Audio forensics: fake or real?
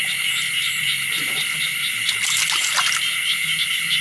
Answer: real